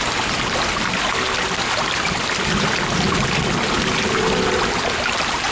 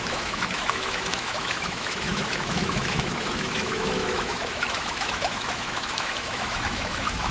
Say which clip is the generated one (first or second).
second